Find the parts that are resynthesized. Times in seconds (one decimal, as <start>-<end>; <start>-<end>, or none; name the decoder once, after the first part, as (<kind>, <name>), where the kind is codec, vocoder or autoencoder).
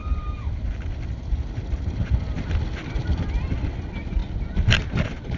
none